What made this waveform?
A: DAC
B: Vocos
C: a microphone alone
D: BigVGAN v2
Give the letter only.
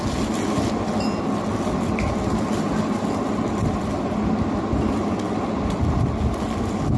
C